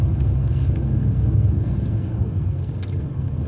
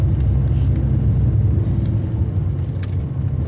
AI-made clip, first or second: first